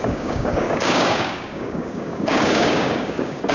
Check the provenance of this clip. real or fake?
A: fake